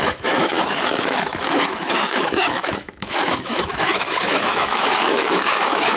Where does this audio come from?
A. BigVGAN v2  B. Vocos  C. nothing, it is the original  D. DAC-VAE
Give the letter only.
D